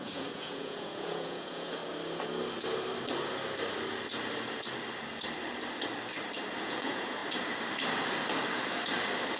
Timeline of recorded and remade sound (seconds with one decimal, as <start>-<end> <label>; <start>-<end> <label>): 0.0-1.8 remade; 1.8-6.6 recorded; 6.6-7.2 remade; 7.2-9.4 recorded